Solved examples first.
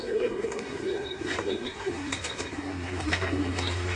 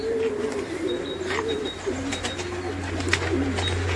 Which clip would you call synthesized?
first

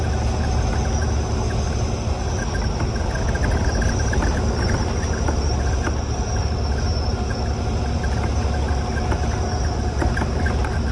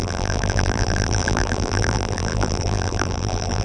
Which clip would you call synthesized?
second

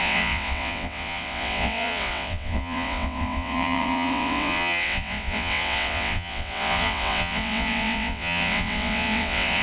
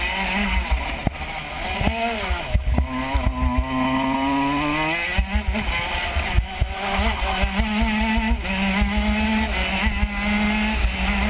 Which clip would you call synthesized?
first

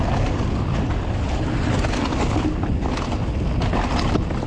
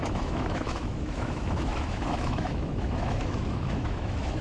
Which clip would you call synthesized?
second